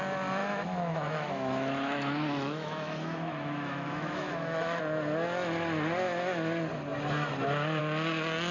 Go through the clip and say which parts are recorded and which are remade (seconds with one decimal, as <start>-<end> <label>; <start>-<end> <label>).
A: 0.0-0.4 recorded; 0.4-4.8 remade; 4.8-8.5 recorded